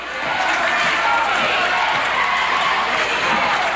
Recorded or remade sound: recorded